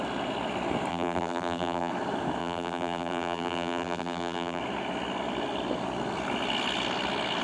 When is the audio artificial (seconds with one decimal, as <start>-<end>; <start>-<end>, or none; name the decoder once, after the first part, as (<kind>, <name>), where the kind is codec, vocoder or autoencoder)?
0.9-1.9 (vocoder, BigVGAN v2); 2.4-4.6